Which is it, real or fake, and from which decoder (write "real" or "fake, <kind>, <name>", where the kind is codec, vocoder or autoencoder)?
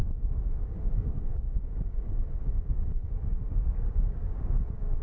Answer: fake, codec, DAC